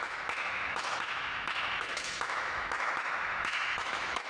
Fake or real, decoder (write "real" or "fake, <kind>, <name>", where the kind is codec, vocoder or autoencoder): fake, autoencoder, DAC-VAE